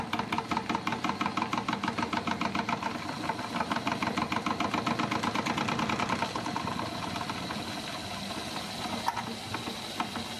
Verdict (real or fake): real